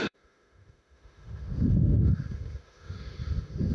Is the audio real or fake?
fake